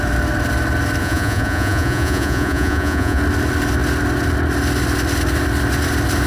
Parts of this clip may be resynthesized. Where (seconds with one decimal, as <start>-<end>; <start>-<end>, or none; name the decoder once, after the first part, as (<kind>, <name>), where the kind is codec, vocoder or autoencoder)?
1.0-3.2 (vocoder, Vocos)